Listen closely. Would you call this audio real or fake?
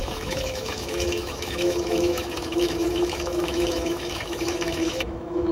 fake